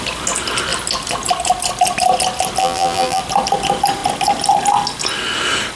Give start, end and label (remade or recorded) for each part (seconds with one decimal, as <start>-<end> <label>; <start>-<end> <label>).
0.0-2.6 recorded; 2.6-3.2 remade; 3.2-5.8 recorded